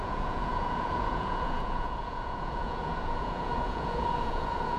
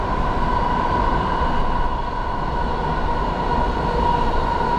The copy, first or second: first